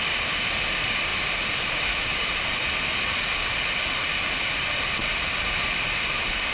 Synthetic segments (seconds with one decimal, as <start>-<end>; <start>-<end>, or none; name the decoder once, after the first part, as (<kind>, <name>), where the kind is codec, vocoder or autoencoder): none